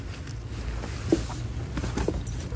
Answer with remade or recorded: recorded